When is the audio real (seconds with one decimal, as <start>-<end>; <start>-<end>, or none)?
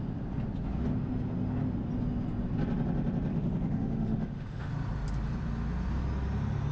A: 0.0-3.3; 4.7-6.7